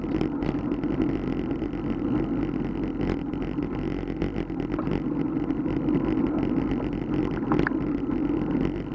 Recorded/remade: recorded